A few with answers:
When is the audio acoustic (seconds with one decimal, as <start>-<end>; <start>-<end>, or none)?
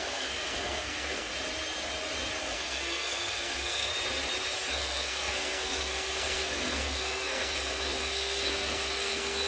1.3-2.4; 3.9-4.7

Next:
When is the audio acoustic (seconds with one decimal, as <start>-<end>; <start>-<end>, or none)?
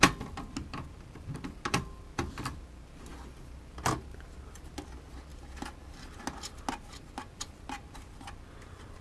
0.0-9.0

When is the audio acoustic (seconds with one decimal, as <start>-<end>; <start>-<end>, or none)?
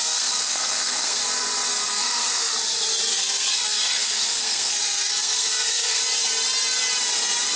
1.2-1.7; 2.5-3.1; 6.0-7.6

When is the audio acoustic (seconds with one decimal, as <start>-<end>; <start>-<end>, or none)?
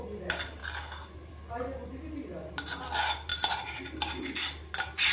0.0-5.1